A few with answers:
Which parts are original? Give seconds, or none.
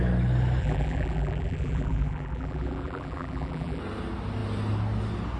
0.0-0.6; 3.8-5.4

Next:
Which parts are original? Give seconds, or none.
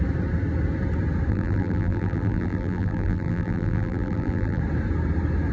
0.0-1.3; 4.6-5.5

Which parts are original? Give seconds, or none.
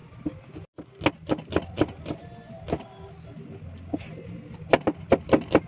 0.0-5.7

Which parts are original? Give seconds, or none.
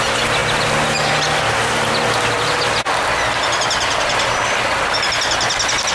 0.0-5.9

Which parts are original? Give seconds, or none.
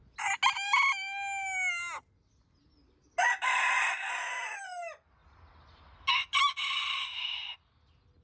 0.0-8.2